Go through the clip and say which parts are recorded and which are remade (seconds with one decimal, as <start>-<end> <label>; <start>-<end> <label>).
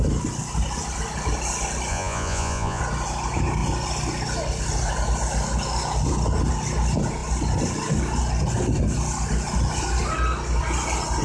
0.0-1.9 recorded; 1.9-2.8 remade; 2.8-11.2 recorded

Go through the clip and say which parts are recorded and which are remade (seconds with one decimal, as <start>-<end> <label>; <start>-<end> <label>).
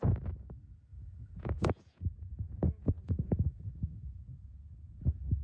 0.0-0.9 recorded; 0.9-3.7 remade; 3.7-4.2 recorded; 4.2-5.0 remade; 5.0-5.4 recorded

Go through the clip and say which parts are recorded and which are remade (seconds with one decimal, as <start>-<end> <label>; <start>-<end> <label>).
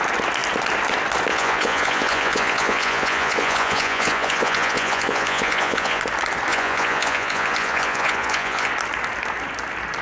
0.0-1.3 recorded; 1.3-6.0 remade; 6.0-6.5 recorded; 6.5-8.7 remade; 8.7-10.0 recorded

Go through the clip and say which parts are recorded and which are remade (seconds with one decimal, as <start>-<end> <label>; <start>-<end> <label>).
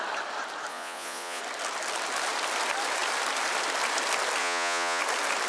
0.0-0.7 recorded; 0.7-1.4 remade; 1.4-4.4 recorded; 4.4-5.0 remade; 5.0-5.5 recorded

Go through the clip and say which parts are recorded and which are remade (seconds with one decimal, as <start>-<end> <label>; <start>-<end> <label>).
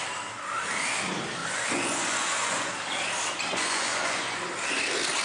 0.0-1.4 recorded; 1.4-2.7 remade; 2.7-3.5 recorded; 3.5-4.4 remade; 4.4-5.2 recorded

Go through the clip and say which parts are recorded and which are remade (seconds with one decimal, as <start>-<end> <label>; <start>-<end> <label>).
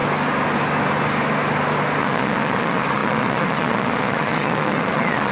0.0-2.0 recorded; 2.0-5.3 remade